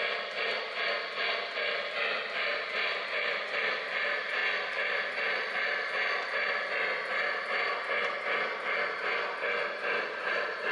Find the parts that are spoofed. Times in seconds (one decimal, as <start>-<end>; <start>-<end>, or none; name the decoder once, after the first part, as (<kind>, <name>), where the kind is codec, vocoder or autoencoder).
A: 9.6-10.7 (vocoder, BigVGAN v2)